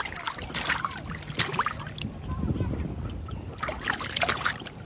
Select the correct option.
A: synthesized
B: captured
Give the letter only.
B